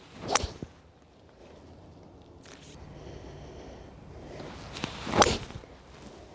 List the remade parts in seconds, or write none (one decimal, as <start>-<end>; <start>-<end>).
none